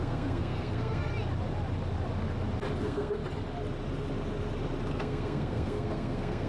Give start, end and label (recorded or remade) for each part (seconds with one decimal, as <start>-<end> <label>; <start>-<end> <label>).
0.0-1.1 remade; 1.1-2.8 recorded; 2.8-3.2 remade; 3.2-4.9 recorded; 4.9-6.5 remade